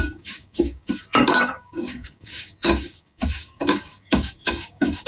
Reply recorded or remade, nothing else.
remade